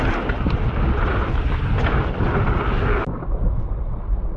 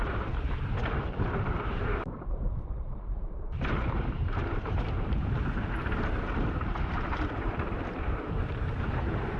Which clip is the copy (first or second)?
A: second